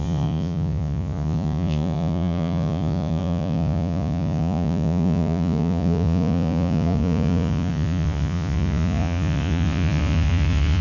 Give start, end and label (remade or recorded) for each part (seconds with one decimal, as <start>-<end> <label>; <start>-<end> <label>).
0.0-10.8 remade